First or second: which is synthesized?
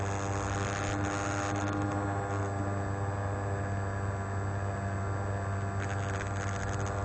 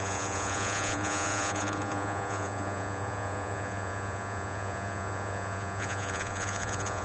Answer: second